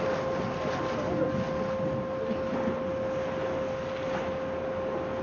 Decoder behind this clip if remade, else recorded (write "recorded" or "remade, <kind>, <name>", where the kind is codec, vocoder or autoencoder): recorded